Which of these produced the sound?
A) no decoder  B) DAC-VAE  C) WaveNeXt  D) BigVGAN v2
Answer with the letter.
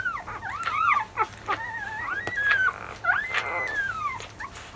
A